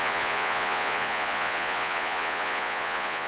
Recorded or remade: remade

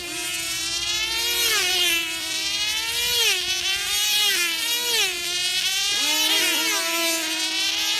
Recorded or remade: recorded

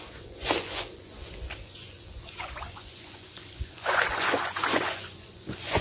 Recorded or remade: remade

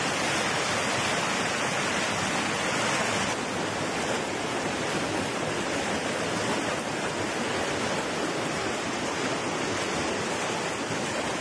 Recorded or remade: recorded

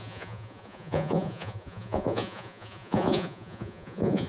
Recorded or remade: remade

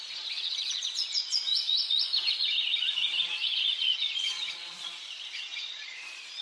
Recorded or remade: remade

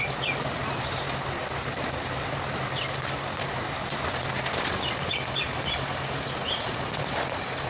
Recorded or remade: recorded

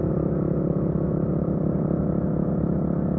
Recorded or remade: recorded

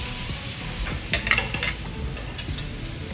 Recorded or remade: recorded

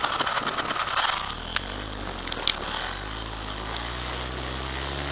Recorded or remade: recorded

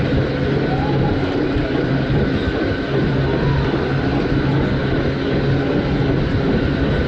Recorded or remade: recorded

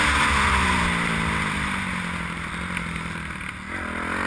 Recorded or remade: recorded